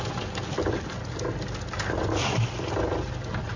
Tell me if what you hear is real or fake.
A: real